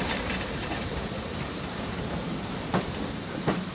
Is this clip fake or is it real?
fake